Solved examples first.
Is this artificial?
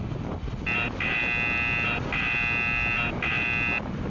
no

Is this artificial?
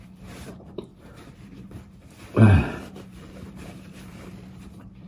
yes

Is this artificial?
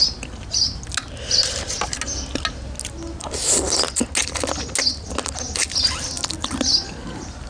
no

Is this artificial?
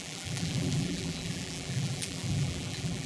yes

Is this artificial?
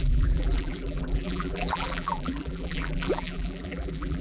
yes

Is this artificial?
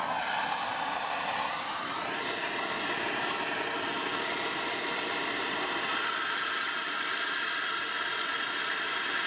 yes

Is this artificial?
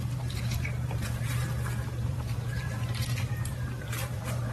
yes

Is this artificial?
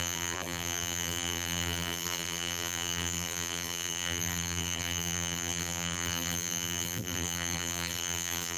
yes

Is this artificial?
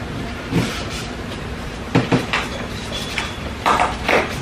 yes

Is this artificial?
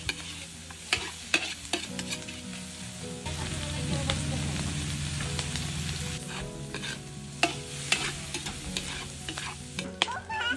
no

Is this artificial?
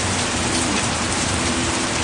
yes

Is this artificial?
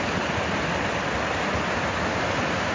yes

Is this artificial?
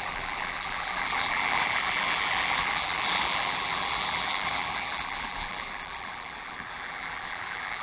yes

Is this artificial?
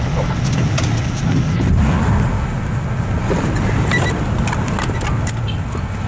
no